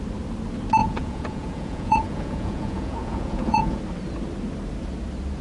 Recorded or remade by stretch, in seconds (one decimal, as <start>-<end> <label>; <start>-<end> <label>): 0.0-0.8 recorded; 0.8-3.8 remade; 3.8-5.4 recorded